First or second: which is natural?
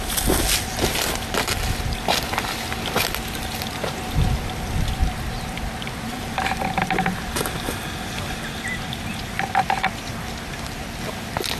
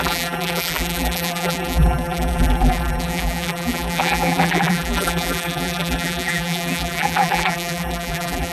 first